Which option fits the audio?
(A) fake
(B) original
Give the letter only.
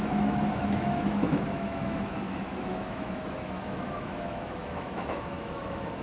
A